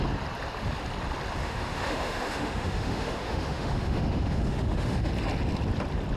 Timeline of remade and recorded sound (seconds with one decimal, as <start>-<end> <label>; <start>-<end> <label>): 0.0-1.4 recorded; 1.4-5.1 remade; 5.1-6.2 recorded